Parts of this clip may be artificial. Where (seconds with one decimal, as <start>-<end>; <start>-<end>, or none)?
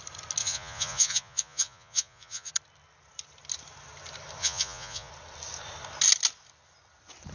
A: 0.4-2.5; 4.4-5.1